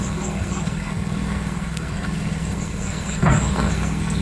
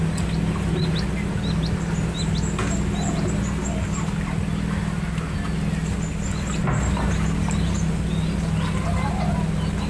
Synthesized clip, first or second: first